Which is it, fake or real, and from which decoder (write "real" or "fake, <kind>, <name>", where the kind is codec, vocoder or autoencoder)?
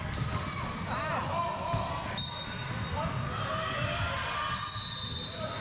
real